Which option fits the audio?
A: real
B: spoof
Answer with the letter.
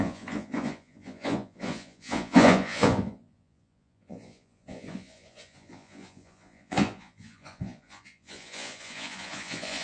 B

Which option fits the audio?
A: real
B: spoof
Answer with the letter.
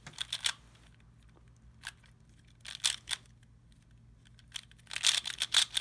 A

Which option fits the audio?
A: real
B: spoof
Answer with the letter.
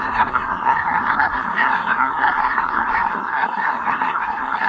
B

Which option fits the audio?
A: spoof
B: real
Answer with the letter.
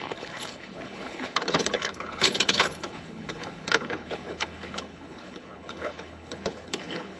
A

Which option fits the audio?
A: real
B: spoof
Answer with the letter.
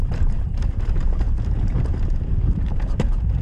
B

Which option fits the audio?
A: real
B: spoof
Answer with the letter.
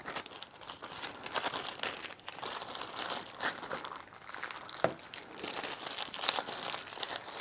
B